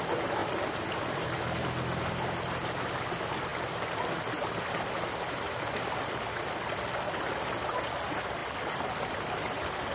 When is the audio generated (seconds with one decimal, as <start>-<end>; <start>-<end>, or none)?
none